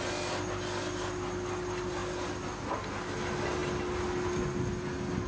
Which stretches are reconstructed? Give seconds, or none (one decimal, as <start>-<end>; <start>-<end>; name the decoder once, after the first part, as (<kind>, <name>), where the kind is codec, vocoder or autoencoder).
none